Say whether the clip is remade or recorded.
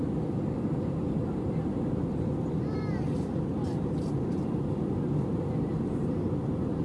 recorded